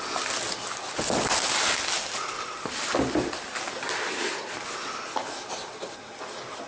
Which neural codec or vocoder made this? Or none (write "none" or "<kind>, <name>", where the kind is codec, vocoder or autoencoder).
none